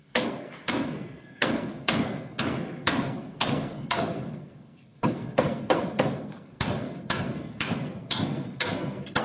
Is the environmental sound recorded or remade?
remade